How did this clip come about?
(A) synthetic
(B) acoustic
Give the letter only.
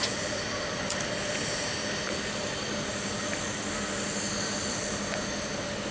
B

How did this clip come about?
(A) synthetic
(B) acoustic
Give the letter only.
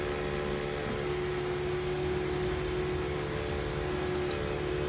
B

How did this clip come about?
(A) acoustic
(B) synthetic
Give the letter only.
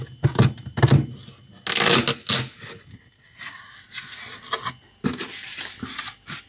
A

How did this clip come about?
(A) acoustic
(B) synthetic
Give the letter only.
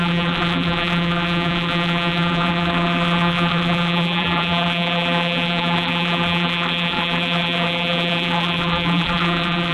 B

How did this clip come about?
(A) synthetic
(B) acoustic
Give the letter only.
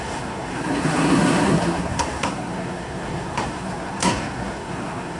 A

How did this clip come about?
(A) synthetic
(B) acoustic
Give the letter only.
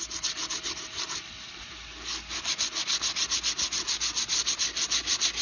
B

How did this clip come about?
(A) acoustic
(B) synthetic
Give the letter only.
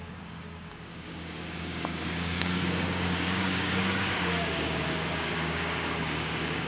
B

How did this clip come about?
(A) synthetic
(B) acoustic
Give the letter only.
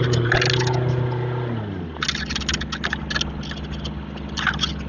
B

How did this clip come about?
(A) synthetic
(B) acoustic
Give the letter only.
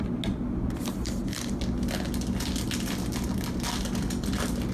B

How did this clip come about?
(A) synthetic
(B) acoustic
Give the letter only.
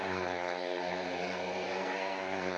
A